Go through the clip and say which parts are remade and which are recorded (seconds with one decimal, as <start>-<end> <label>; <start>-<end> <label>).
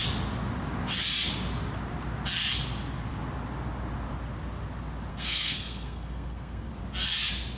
0.0-5.1 recorded; 5.1-6.7 remade; 6.7-7.6 recorded